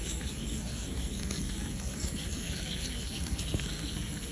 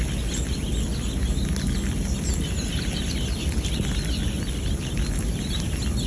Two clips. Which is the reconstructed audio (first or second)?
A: first